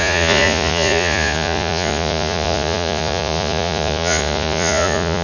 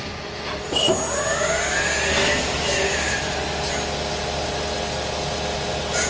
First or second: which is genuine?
second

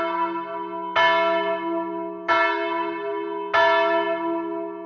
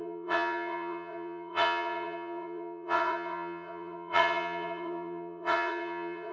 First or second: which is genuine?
first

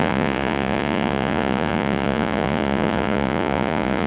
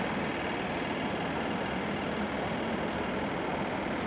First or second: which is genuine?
second